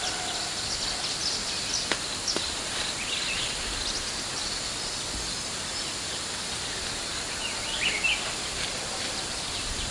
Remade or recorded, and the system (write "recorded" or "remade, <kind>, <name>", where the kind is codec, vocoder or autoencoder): recorded